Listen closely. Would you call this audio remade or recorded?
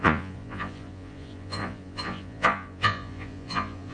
remade